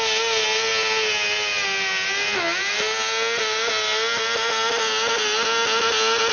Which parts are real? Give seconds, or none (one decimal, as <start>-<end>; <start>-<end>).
0.0-6.3